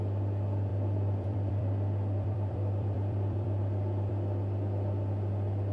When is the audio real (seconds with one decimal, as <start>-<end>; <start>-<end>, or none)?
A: 0.0-0.7; 4.1-5.7